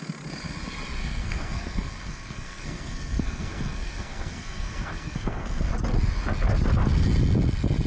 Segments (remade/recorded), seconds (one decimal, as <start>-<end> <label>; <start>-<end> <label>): 0.0-1.0 recorded; 1.0-5.7 remade; 5.7-7.9 recorded